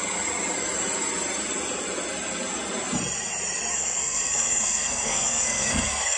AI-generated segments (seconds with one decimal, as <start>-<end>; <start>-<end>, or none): 3.7-6.2